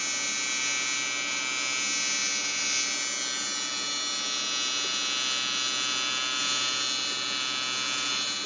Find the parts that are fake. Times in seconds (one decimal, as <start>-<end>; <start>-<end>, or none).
none